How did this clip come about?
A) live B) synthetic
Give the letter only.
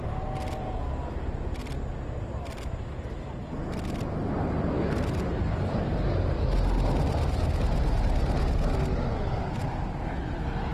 A